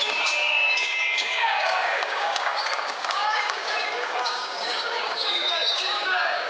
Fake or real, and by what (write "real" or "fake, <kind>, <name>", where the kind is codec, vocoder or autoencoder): fake, codec, DAC